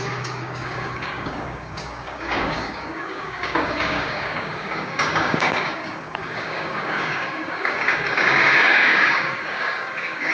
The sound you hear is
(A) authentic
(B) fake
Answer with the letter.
B